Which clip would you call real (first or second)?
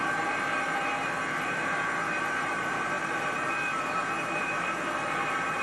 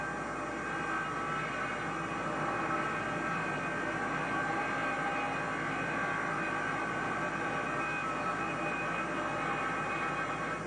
second